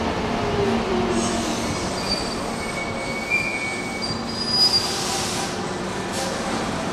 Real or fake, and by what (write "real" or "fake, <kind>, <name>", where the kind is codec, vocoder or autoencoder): real